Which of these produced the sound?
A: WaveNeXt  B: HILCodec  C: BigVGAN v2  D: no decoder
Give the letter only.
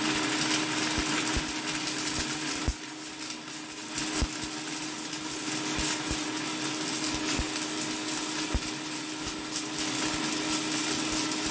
D